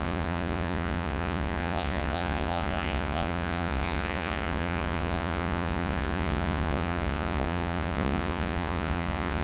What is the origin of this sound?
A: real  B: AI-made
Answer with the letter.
B